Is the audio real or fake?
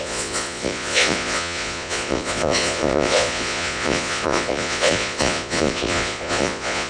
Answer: fake